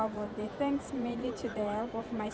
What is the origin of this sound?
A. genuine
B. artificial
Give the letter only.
B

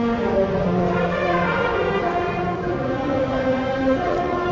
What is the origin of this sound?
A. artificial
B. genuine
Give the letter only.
A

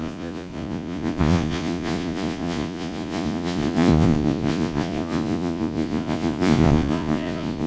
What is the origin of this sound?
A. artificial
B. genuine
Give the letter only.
A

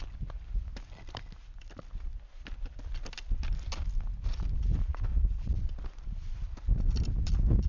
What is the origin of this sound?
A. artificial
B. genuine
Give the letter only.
B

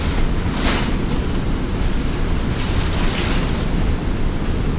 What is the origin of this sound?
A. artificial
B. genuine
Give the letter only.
B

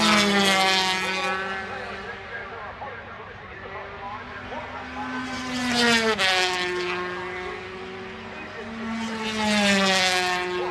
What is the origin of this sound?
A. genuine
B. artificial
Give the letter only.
A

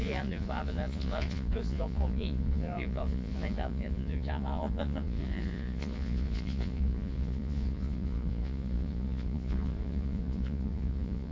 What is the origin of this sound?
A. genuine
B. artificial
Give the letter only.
B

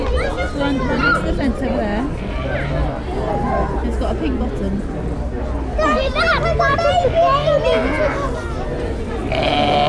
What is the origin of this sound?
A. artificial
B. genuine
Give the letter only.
B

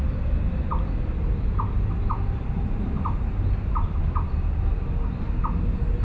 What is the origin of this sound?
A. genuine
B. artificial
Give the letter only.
A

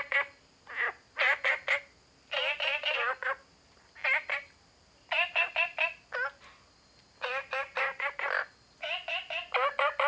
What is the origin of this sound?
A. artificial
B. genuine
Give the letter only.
B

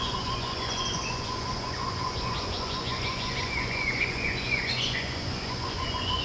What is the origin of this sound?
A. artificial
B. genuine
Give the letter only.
A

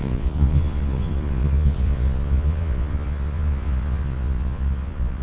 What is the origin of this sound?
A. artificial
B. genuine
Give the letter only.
A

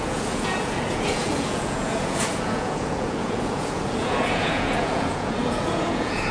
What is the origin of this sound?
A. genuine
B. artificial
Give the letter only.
B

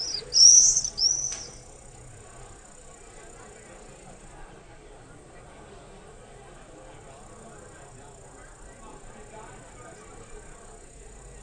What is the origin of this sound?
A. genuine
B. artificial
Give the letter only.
A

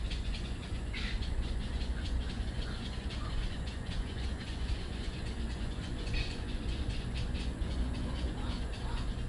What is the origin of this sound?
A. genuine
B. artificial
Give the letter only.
B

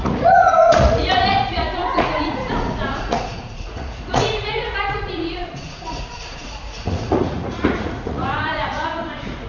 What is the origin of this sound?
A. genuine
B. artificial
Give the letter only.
B